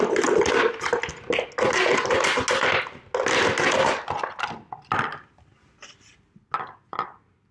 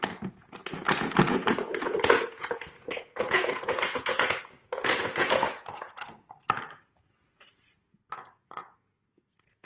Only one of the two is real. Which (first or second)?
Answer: first